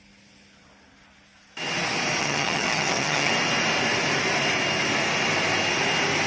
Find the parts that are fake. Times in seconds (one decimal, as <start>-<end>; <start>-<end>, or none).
2.2-3.3